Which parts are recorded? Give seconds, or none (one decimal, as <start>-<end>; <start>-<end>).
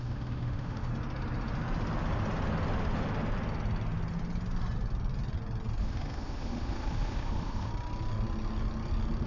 0.9-5.8; 7.7-9.3